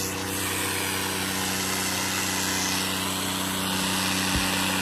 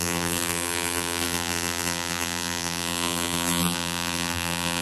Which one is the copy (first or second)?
second